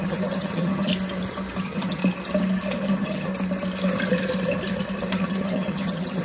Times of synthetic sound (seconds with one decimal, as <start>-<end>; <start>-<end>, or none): 0.0-0.9; 1.6-2.0; 2.8-3.3; 5.1-6.2